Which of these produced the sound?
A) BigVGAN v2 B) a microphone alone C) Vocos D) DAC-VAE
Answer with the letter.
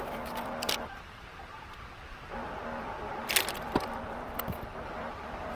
B